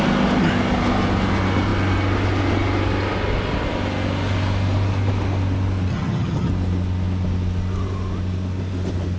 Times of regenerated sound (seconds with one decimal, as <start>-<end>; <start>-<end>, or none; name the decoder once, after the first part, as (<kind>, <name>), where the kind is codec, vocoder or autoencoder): 5.9-6.5 (vocoder, HiFi-GAN)